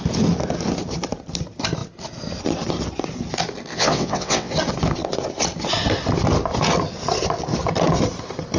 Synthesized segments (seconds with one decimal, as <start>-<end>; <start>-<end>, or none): 3.7-4.5